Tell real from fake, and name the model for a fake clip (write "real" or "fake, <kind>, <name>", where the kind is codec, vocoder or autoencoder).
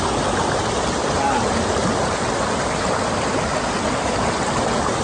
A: real